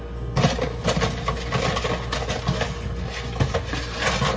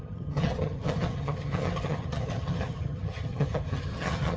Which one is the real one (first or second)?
first